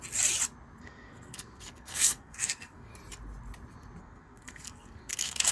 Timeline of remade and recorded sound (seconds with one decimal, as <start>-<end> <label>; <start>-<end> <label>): 0.0-0.8 recorded; 0.8-2.9 remade; 2.9-4.0 recorded; 4.0-5.5 remade